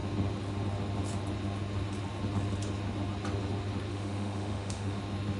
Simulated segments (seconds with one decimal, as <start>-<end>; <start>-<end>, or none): 3.9-5.0